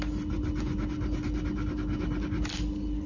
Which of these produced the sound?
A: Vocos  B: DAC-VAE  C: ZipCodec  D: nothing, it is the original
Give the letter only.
D